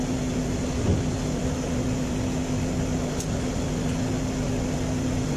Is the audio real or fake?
real